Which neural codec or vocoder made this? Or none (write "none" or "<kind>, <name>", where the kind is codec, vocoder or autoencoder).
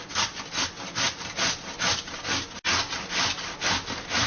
none